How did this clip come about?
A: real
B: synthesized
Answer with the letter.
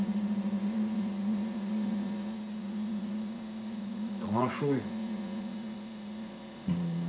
B